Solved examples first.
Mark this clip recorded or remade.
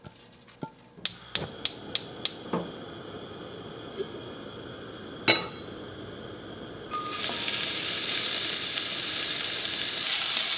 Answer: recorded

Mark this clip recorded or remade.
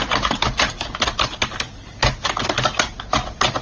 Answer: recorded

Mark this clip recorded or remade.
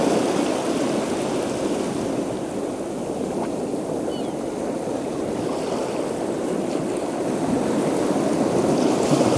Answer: recorded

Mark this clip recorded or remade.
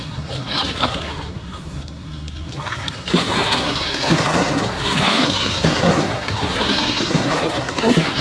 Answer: remade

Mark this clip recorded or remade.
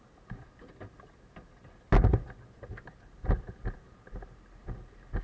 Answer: recorded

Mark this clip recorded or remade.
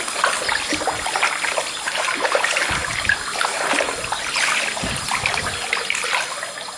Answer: recorded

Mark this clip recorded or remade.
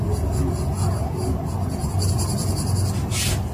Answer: recorded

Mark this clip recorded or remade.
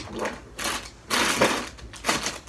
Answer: recorded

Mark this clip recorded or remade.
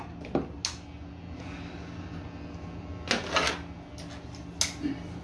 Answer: recorded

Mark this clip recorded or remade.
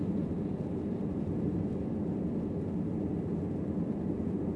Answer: recorded